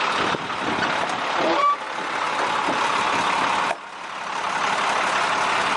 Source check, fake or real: real